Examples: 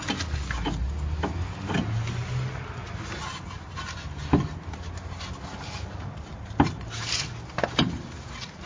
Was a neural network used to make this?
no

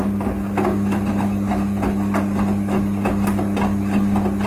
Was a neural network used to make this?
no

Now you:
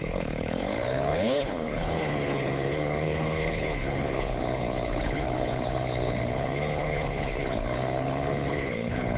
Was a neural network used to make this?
yes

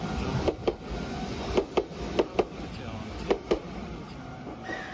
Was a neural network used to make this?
no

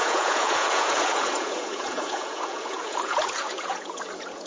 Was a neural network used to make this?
yes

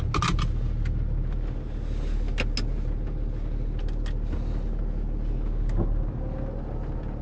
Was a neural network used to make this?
no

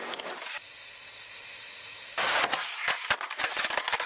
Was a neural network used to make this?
no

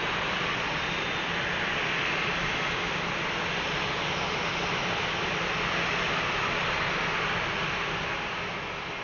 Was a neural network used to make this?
no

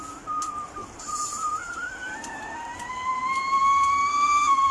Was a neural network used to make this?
no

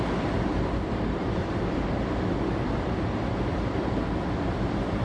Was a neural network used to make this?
yes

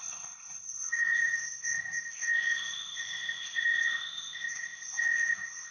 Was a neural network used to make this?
yes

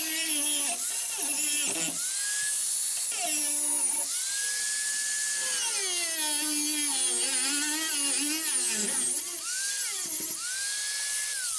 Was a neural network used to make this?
no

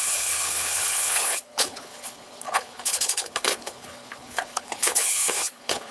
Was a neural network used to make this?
yes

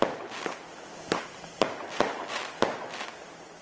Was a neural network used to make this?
no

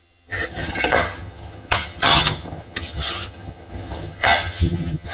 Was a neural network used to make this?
yes